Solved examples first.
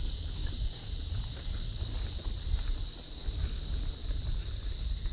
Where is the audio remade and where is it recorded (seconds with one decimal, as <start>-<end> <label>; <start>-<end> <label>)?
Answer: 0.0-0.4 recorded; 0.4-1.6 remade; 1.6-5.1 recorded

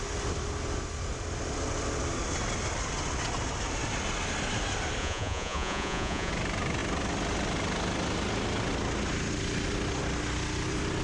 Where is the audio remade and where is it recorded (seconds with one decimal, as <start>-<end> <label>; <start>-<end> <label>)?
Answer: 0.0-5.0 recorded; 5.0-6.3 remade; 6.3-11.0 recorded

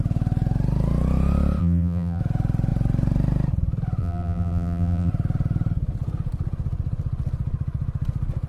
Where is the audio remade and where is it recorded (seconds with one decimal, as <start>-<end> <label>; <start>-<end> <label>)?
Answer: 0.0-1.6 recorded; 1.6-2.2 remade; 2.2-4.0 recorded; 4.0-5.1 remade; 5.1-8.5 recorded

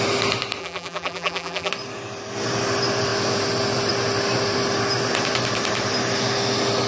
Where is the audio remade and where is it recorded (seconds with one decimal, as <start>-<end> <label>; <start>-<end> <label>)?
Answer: 0.0-0.6 recorded; 0.6-1.7 remade; 1.7-6.9 recorded

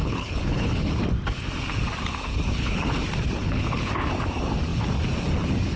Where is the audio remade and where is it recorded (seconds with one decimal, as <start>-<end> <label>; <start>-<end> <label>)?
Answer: 0.0-0.9 remade; 0.9-2.3 recorded; 2.3-2.9 remade; 2.9-3.4 recorded; 3.4-3.9 remade; 3.9-5.8 recorded

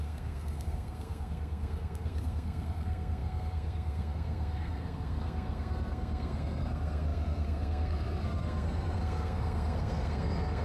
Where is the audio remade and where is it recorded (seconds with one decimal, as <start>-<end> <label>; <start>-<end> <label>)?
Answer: 0.0-10.6 remade